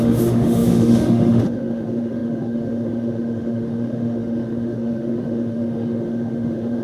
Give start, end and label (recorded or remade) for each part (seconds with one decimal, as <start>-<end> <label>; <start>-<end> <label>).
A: 0.0-6.8 remade